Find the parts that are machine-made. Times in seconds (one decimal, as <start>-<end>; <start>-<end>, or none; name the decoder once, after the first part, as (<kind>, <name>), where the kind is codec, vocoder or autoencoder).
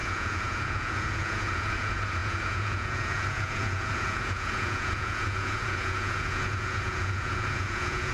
0.0-8.1 (vocoder, Vocos)